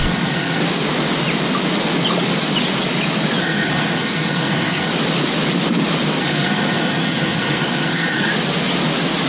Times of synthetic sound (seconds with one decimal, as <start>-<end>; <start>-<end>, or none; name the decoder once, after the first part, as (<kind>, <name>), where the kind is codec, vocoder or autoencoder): 0.0-0.6 (codec, SNAC); 3.4-4.9; 6.2-8.3